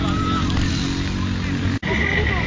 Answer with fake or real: real